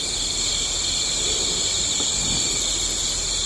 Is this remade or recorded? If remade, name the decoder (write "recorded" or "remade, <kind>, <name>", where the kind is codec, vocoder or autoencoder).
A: recorded